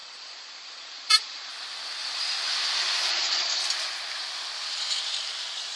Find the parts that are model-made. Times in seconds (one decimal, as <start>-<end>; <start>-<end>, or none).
0.0-1.5; 3.1-3.6